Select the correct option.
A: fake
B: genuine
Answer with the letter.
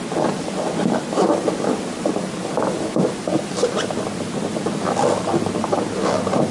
B